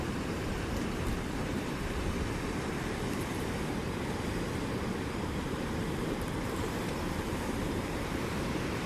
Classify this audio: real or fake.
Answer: fake